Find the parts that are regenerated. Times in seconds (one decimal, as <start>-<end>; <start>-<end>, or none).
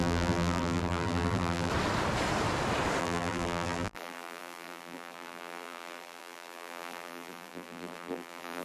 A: 0.0-1.7; 3.0-8.6